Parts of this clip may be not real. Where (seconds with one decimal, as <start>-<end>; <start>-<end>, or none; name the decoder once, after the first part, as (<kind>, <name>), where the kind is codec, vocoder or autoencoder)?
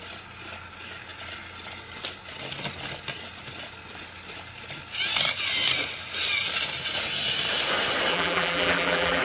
8.1-9.2 (vocoder, BigVGAN v2)